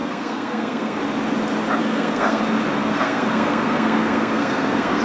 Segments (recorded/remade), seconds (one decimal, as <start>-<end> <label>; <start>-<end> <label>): 0.0-1.0 remade; 1.0-1.8 recorded; 1.8-2.4 remade; 2.4-2.8 recorded; 2.8-5.0 remade